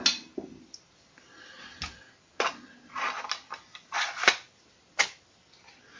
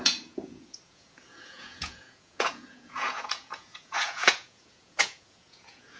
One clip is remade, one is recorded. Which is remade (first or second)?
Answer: second